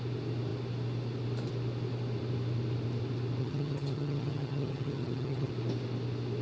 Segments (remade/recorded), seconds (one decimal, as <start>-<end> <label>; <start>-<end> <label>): 0.0-3.4 recorded; 3.4-5.5 remade; 5.5-6.4 recorded